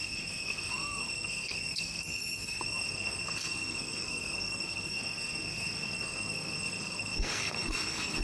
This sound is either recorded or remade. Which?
remade